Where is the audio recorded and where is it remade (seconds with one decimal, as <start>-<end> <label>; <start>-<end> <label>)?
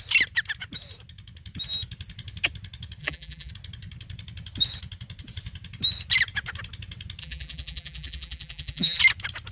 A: 0.0-3.0 recorded; 3.0-3.5 remade; 3.5-7.2 recorded; 7.2-9.0 remade; 9.0-9.5 recorded